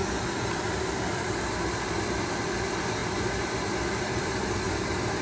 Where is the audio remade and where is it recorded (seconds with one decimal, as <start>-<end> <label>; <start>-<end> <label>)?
0.0-2.4 remade; 2.4-3.0 recorded; 3.0-5.2 remade